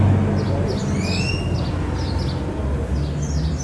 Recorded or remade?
recorded